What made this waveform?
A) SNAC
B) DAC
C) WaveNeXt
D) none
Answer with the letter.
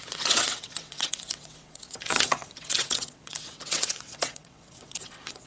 C